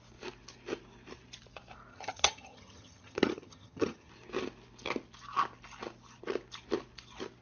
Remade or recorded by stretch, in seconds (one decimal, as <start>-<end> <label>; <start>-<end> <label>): 0.0-1.9 recorded; 1.9-4.1 remade; 4.1-7.4 recorded